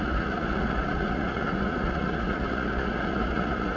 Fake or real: fake